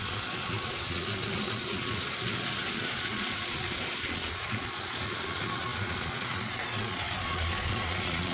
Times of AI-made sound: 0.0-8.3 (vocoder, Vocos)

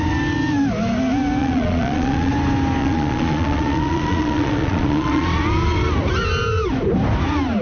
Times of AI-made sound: 1.4-2.3 (vocoder, Vocos); 2.8-5.4

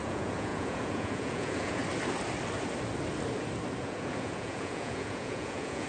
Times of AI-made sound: 0.0-1.8 (vocoder, Vocos); 3.8-5.9

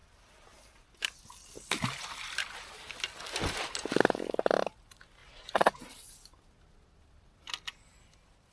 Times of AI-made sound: 5.2-5.8 (vocoder, Vocos)

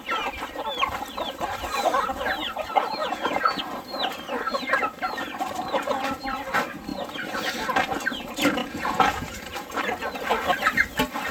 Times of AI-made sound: 3.0-3.6 (vocoder, Vocos); 8.6-9.8

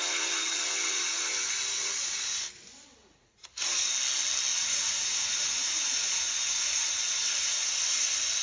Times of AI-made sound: 0.0-2.4 (vocoder, Vocos); 3.0-3.9; 4.5-8.4

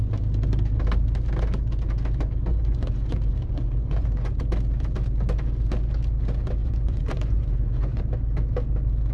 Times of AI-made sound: 2.5-4.5 (vocoder, Vocos); 6.6-8.0

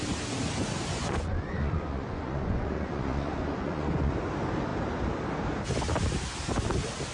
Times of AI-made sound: 0.9-4.1 (vocoder, Vocos)